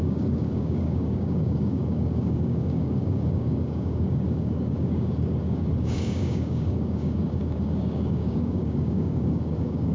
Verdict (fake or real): fake